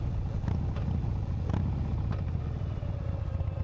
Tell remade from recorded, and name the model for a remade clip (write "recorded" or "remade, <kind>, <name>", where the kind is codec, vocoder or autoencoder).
recorded